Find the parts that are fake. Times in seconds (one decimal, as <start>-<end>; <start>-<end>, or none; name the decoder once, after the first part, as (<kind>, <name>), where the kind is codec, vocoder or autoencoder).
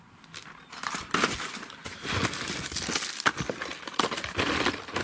0.4-1.3 (vocoder, BigVGAN v2)